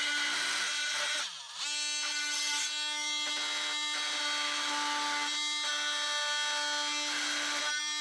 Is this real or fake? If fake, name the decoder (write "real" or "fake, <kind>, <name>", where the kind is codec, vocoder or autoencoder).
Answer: real